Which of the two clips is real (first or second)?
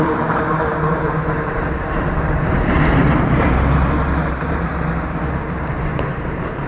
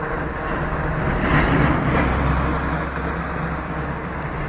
second